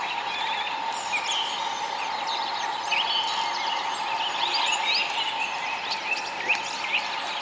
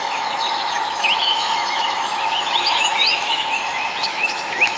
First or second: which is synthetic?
second